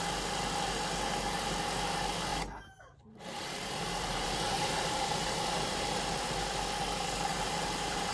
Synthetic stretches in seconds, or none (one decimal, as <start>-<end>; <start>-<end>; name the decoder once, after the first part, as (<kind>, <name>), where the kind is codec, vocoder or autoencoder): 2.3-6.3 (vocoder, BigVGAN v2); 7.3-8.1